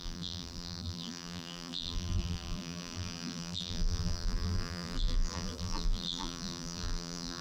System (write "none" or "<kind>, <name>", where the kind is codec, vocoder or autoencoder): vocoder, BigVGAN v2